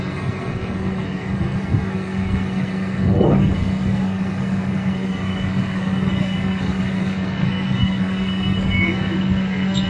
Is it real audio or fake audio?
fake